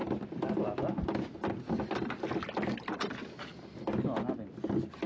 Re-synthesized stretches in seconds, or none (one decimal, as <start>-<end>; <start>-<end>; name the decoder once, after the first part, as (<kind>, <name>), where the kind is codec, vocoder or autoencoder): none